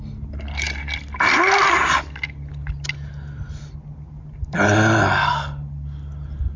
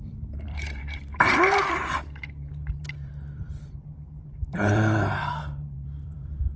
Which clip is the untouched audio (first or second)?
first